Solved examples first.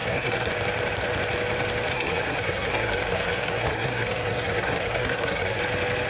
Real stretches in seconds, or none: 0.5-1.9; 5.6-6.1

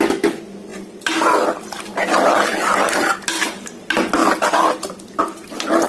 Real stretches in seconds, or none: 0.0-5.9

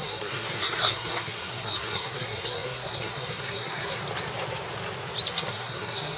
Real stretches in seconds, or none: 4.0-5.3

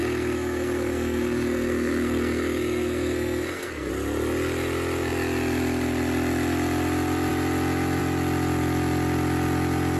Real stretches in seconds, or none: 3.9-10.0